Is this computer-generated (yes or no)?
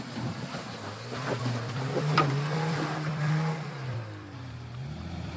yes